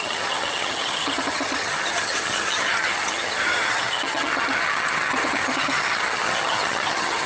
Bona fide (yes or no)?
no